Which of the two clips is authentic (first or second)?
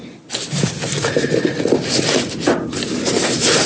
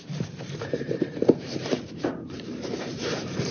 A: first